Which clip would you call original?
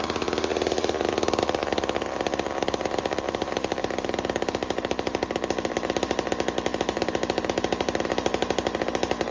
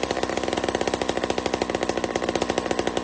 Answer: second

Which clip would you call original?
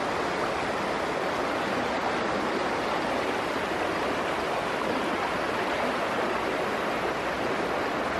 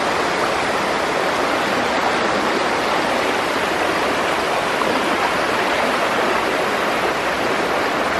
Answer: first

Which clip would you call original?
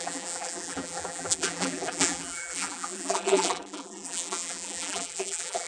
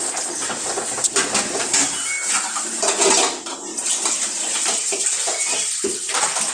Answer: second